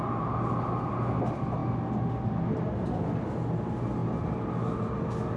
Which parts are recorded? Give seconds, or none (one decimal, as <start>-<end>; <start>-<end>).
0.0-5.4